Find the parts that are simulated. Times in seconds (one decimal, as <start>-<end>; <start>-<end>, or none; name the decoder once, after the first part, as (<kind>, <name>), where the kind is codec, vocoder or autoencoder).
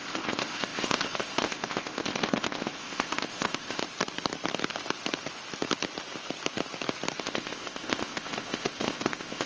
0.0-3.8 (codec, ZipCodec); 7.2-9.5